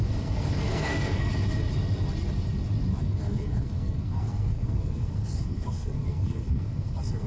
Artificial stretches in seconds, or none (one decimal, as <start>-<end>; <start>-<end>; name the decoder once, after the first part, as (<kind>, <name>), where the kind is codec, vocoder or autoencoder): 0.0-1.3 (codec, SNAC); 3.0-7.3